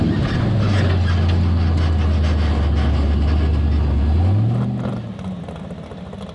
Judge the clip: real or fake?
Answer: real